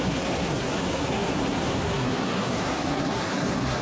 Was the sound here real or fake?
fake